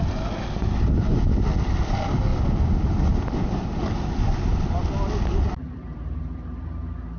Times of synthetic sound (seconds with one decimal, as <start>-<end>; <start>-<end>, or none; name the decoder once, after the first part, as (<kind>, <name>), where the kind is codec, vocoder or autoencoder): 2.3-6.6 (vocoder, BigVGAN v2)